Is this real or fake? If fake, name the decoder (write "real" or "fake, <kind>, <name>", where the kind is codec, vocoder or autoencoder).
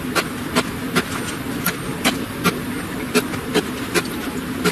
real